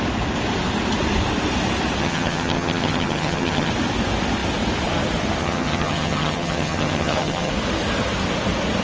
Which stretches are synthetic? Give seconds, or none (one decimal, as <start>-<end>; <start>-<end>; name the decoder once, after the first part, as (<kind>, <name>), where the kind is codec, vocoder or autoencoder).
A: 2.0-3.7 (vocoder, HiFi-GAN); 5.4-7.5